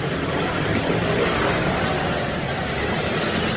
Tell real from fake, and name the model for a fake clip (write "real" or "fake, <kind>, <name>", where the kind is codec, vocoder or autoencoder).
real